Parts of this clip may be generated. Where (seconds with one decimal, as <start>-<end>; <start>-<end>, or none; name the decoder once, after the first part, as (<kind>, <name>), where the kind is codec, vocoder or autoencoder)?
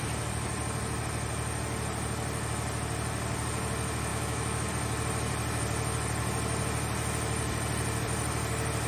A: 4.1-4.7 (autoencoder, DAC-VAE)